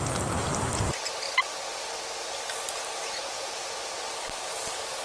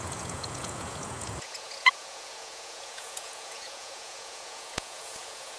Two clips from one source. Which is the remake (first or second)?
second